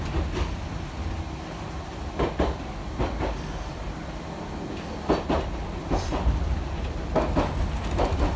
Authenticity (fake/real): real